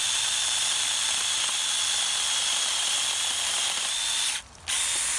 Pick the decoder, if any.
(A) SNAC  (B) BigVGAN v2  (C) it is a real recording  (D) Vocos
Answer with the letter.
C